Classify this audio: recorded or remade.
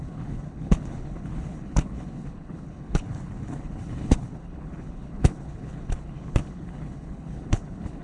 remade